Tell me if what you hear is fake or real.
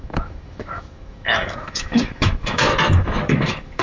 fake